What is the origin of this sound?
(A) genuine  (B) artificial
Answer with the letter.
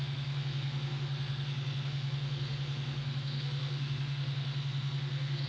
B